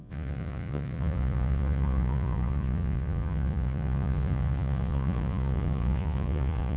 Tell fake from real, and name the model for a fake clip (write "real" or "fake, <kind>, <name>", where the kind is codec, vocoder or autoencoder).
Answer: fake, vocoder, Vocos